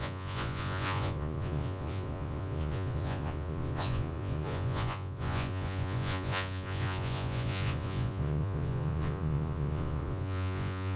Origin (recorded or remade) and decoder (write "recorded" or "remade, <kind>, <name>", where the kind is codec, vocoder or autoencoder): remade, vocoder, Vocos